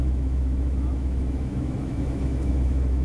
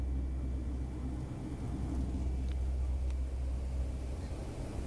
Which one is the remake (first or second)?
first